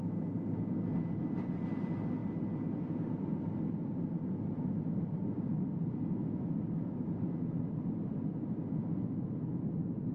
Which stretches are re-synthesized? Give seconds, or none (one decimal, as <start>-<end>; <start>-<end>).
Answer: none